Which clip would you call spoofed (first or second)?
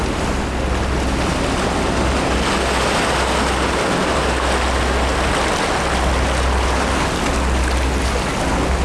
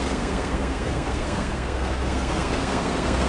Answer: second